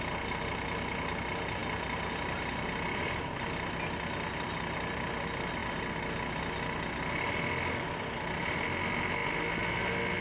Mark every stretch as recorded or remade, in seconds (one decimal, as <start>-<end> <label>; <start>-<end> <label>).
0.0-10.2 recorded